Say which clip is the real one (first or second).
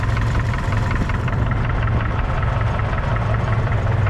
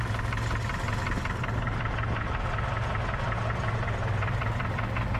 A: second